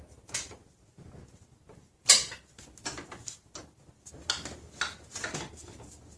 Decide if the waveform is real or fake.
real